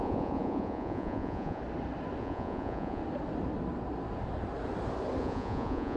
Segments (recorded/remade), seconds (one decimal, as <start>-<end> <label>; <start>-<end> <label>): 0.0-1.6 remade; 1.6-2.2 recorded; 2.2-3.0 remade; 3.0-5.2 recorded; 5.2-6.0 remade